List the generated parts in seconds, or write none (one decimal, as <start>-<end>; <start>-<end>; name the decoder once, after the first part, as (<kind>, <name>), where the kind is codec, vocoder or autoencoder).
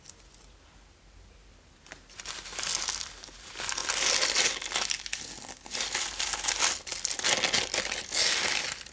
none